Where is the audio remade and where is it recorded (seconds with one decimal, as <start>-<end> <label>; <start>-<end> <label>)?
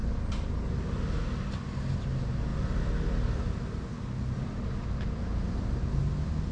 0.0-2.5 recorded; 2.5-6.0 remade; 6.0-6.5 recorded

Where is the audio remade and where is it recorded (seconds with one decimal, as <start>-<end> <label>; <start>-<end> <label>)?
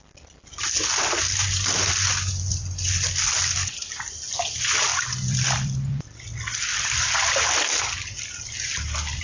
0.0-2.5 recorded; 2.5-3.1 remade; 3.1-4.9 recorded; 4.9-7.0 remade; 7.0-9.2 recorded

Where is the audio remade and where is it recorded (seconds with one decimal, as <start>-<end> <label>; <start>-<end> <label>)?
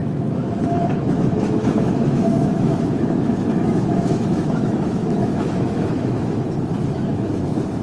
0.0-7.8 remade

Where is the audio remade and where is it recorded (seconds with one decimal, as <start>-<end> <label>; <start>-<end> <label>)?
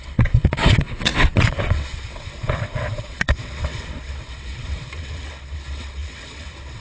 0.0-6.8 remade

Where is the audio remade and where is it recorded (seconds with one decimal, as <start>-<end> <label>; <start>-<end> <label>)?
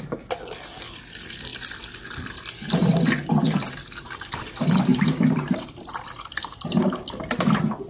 0.0-4.0 recorded; 4.0-4.5 remade; 4.5-4.9 recorded; 4.9-5.8 remade; 5.8-7.9 recorded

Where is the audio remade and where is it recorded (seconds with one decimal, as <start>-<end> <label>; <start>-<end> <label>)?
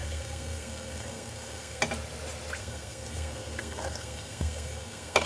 0.0-1.8 remade; 1.8-2.6 recorded; 2.6-5.3 remade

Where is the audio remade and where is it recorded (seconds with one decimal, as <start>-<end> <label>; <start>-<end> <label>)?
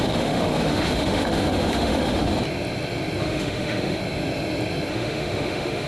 0.0-2.3 remade; 2.3-3.2 recorded; 3.2-4.0 remade; 4.0-4.9 recorded; 4.9-5.9 remade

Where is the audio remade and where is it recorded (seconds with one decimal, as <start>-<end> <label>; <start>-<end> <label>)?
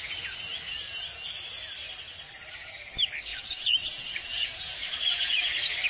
0.0-3.3 recorded; 3.3-5.4 remade; 5.4-5.9 recorded